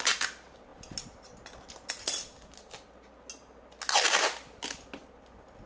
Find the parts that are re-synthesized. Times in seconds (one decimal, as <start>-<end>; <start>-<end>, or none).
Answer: none